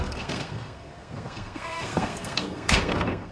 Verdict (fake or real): fake